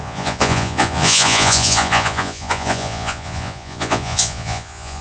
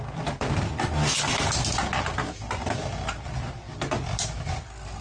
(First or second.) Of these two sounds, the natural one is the second